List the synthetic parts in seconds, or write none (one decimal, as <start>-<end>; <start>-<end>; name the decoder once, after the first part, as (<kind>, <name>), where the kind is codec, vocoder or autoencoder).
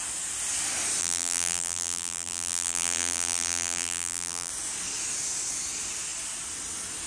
1.0-4.5 (vocoder, BigVGAN v2)